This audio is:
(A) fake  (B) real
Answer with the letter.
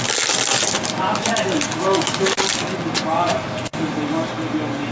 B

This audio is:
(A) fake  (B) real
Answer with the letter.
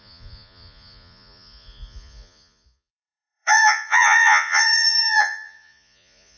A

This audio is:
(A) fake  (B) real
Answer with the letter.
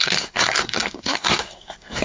A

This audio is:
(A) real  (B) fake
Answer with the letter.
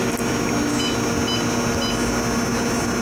A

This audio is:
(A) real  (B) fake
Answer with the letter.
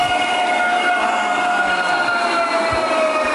A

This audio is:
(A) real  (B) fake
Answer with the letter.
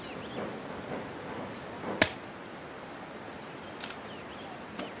A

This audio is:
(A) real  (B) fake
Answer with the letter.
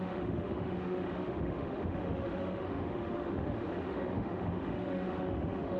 B